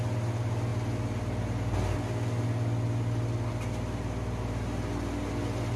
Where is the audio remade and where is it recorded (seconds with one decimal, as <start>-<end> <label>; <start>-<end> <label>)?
0.0-5.8 recorded